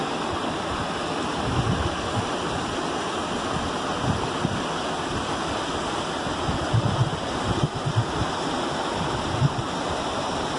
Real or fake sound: real